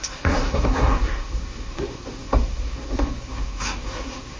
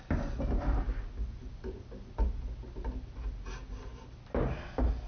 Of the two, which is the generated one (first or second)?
first